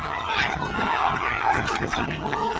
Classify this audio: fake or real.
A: fake